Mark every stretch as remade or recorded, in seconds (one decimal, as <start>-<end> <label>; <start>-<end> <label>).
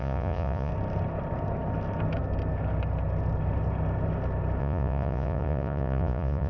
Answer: 0.0-0.7 remade; 0.7-4.6 recorded; 4.6-6.5 remade